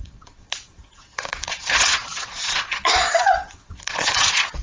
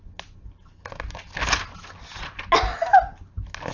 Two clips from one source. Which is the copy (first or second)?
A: first